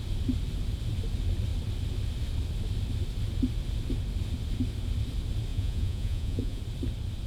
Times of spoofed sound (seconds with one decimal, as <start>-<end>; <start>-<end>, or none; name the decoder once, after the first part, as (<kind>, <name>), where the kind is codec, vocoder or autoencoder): 5.5-6.6 (vocoder, Vocos)